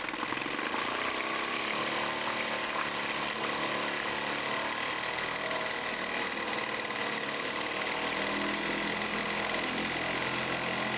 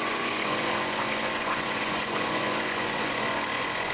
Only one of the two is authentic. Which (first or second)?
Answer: first